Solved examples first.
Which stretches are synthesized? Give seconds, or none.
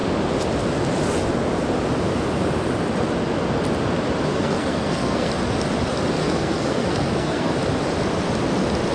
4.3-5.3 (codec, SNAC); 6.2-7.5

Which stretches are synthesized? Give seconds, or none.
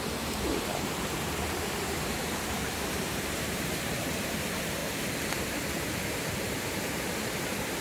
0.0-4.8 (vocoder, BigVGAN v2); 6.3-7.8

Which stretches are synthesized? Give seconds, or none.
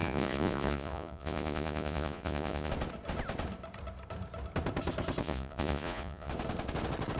0.0-2.7 (vocoder, Vocos); 5.2-6.3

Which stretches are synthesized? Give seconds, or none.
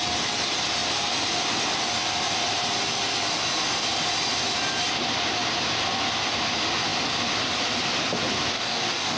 8.5-9.2 (codec, DAC)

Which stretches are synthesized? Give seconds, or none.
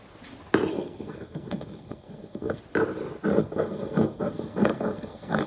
0.7-2.6 (codec, SNAC); 3.3-5.5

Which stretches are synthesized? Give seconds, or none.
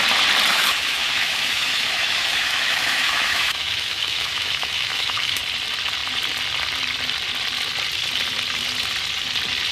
0.5-5.4 (autoencoder, DAC-VAE)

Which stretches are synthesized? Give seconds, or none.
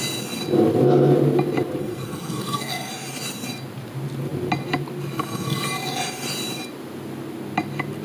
1.8-2.9 (codec, SNAC)